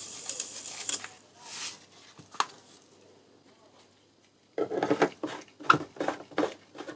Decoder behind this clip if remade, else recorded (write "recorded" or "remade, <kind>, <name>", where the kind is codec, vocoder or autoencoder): recorded